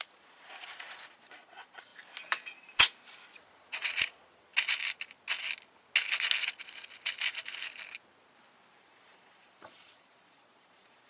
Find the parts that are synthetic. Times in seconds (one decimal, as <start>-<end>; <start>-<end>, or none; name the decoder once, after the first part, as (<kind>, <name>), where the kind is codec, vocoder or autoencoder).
0.0-1.9 (vocoder, Vocos); 3.4-4.5; 8.8-11.1